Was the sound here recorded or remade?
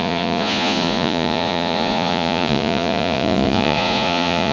remade